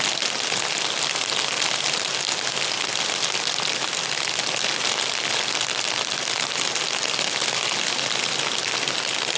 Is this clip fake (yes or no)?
no